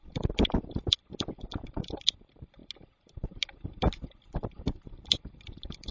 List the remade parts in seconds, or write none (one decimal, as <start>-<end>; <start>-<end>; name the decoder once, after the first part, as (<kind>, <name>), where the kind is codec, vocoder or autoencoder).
0.0-1.1 (vocoder, BigVGAN v2); 2.1-2.6; 4.9-5.9